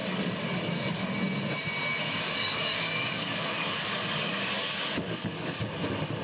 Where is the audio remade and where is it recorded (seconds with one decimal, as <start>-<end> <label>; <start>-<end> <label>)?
0.0-1.1 remade; 1.1-1.9 recorded; 1.9-5.6 remade; 5.6-6.2 recorded